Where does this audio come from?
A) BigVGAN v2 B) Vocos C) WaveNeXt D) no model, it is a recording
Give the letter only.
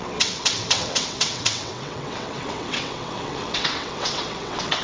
C